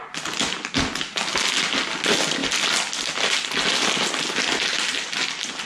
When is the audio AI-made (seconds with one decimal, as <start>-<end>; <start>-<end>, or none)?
none